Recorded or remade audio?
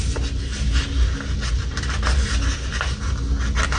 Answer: recorded